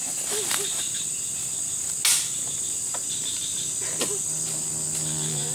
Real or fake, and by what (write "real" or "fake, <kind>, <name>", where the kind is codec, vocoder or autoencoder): real